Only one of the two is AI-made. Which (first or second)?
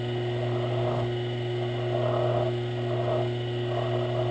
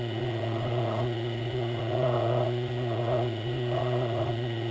second